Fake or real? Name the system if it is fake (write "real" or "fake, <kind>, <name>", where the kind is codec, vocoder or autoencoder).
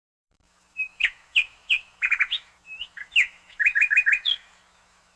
fake, autoencoder, DAC-VAE